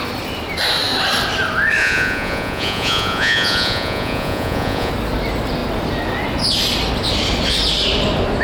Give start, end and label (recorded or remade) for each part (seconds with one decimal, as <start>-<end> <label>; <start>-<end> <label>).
0.0-1.8 recorded; 1.8-4.9 remade; 4.9-8.4 recorded